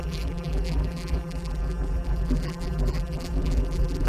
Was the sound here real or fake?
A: fake